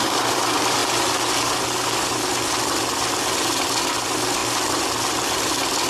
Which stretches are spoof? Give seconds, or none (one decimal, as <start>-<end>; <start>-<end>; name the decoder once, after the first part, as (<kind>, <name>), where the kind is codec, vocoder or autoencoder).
none